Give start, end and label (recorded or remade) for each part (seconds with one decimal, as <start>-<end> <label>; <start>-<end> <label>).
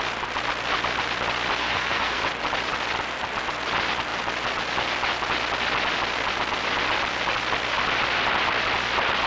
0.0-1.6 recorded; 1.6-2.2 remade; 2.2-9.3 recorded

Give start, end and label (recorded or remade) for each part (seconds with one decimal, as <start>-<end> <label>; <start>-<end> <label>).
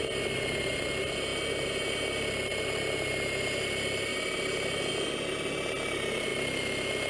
0.0-7.1 recorded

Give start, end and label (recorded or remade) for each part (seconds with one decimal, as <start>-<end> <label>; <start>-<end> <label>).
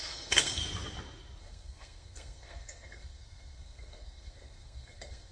0.0-0.6 remade; 0.6-1.4 recorded; 1.4-5.3 remade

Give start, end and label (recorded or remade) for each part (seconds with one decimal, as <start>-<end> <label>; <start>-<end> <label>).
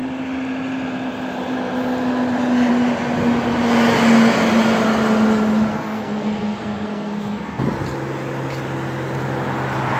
0.0-5.7 recorded; 5.7-7.6 remade; 7.6-10.0 recorded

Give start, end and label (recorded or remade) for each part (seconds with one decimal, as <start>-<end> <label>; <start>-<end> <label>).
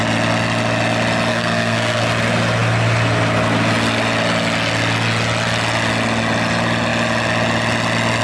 0.0-1.3 recorded; 1.3-2.0 remade; 2.0-8.2 recorded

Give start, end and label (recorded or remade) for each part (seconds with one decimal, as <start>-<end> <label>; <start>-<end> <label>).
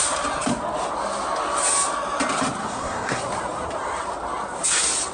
0.0-2.6 recorded; 2.6-3.2 remade; 3.2-5.1 recorded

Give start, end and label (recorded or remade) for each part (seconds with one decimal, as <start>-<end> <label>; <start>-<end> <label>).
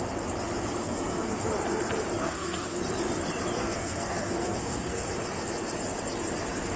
0.0-0.8 recorded; 0.8-1.4 remade; 1.4-2.2 recorded; 2.2-2.8 remade; 2.8-3.6 recorded; 3.6-5.1 remade; 5.1-6.8 recorded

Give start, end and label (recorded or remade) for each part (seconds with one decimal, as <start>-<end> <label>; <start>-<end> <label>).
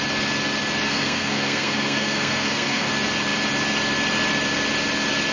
0.0-0.9 recorded; 0.9-2.9 remade; 2.9-5.3 recorded